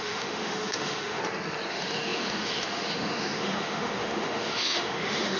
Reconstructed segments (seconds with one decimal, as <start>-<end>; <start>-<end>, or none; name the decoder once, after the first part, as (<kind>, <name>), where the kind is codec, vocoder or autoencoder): 0.0-1.2 (autoencoder, DAC-VAE); 1.7-5.4